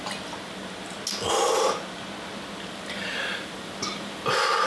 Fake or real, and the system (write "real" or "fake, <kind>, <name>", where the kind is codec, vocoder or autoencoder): real